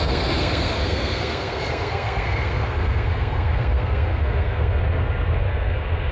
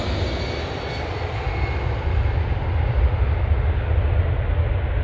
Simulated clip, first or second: first